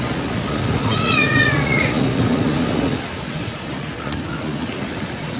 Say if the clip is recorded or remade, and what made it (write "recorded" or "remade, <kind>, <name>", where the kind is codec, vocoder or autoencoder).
remade, vocoder, Vocos